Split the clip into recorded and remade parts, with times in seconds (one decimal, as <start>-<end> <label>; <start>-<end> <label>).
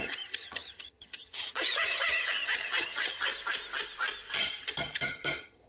0.0-3.3 remade; 3.3-4.3 recorded; 4.3-5.7 remade